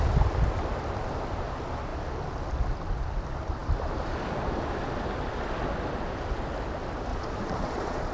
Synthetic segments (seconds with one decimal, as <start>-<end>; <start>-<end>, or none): 7.1-8.1